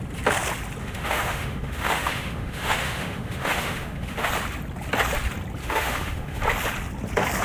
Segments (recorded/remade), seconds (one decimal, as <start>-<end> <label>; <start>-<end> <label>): 0.0-0.8 recorded; 0.8-4.3 remade; 4.3-5.6 recorded; 5.6-6.4 remade; 6.4-7.4 recorded